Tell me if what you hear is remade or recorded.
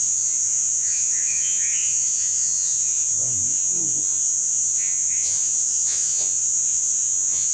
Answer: remade